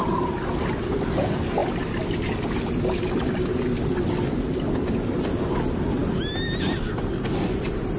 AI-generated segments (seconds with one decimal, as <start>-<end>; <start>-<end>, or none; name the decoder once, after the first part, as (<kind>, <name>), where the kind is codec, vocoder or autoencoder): 6.0-8.0 (vocoder, BigVGAN v2)